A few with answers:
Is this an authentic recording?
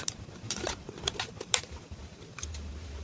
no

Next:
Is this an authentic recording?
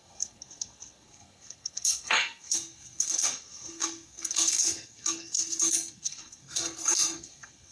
no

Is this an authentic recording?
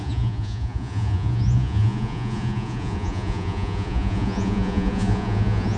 no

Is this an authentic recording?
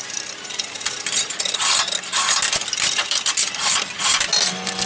yes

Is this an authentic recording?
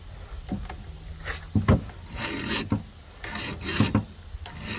yes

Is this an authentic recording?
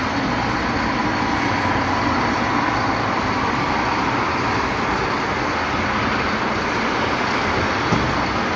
yes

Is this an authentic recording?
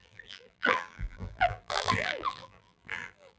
no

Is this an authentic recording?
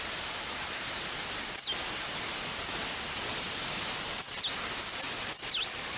yes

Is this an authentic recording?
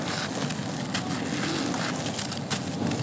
yes